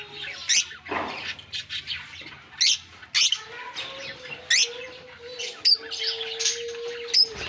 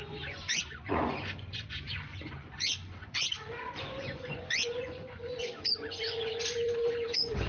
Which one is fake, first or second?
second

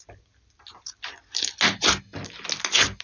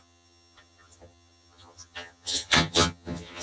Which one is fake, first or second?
second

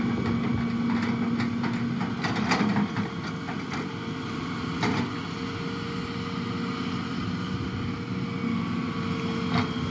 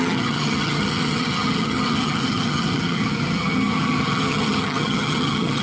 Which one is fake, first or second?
second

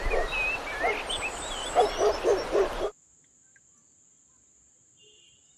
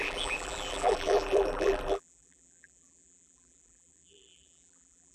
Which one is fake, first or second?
second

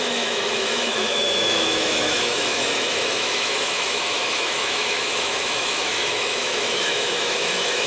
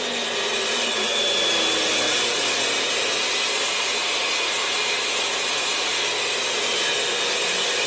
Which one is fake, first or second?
first